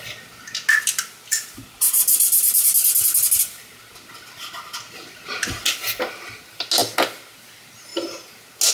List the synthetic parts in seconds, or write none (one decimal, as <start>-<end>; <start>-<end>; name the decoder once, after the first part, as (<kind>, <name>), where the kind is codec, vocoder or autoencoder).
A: none